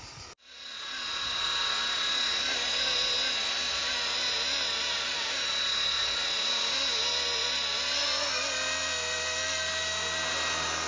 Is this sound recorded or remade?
recorded